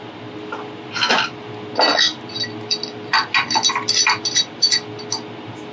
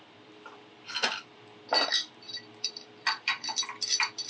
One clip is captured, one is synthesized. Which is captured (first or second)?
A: first